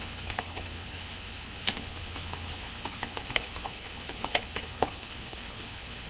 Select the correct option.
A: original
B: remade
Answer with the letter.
B